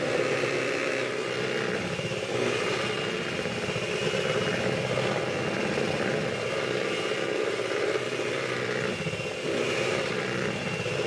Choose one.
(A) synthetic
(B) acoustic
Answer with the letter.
A